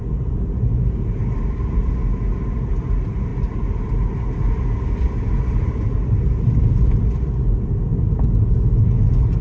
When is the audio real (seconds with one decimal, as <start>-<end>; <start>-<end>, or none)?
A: 0.0-9.4